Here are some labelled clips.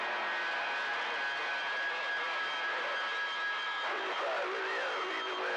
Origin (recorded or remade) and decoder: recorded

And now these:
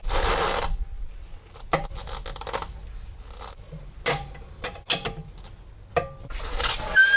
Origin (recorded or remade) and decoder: recorded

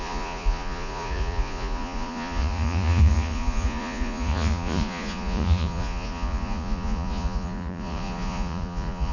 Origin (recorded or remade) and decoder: remade, vocoder, Vocos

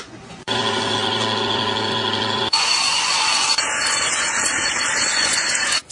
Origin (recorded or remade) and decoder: remade, vocoder, Vocos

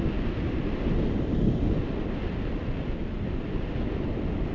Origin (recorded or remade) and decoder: recorded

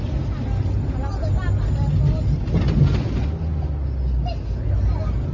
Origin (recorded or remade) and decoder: recorded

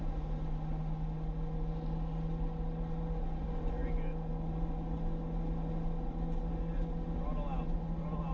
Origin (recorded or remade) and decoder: recorded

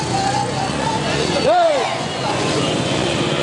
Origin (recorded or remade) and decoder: remade, vocoder, Vocos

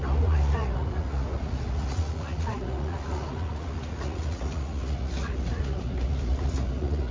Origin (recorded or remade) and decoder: remade, vocoder, Vocos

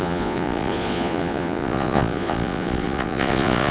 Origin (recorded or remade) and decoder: remade, vocoder, Vocos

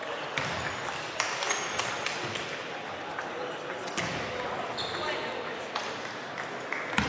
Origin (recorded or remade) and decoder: recorded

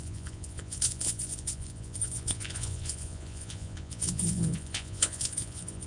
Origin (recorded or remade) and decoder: remade, vocoder, Vocos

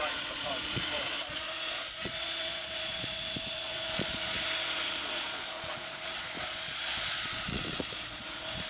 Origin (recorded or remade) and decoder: remade, vocoder, Vocos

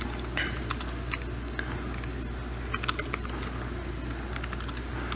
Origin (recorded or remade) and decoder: recorded